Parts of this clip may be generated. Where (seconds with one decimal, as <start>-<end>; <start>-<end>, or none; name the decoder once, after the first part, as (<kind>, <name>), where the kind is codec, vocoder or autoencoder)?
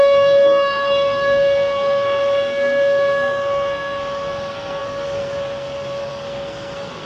0.0-7.1 (codec, SNAC)